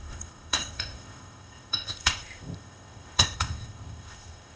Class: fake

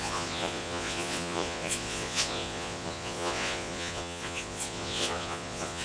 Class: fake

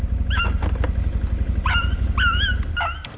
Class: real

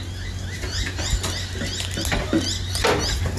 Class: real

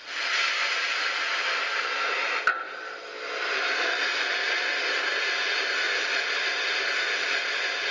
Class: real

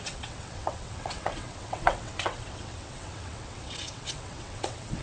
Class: fake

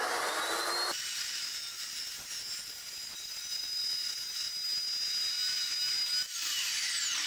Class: real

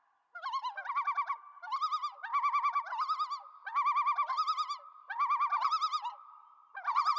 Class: real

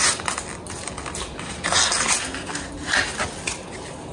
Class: real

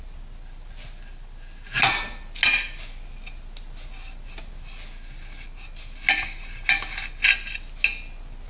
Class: real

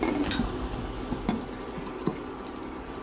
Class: real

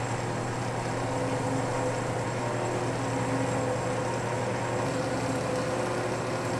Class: real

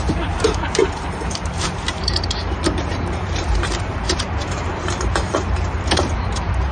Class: fake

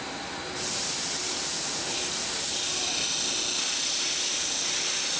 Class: real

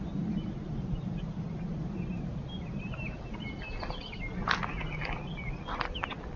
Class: real